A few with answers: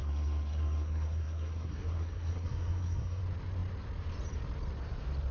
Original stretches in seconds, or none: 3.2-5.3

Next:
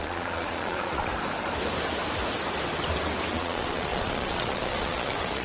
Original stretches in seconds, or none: 1.1-3.3

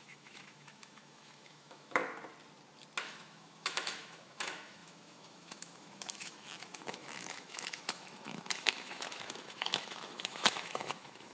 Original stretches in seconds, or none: 2.0-3.0

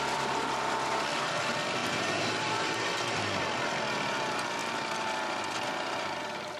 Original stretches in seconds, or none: 0.0-1.8; 3.8-6.6

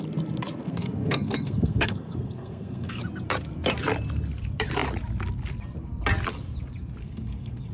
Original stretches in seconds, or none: 0.0-0.6; 3.0-7.0